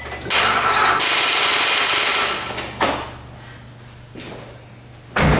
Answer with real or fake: real